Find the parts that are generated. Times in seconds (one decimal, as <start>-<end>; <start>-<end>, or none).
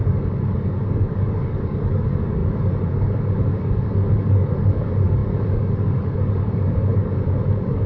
0.0-7.9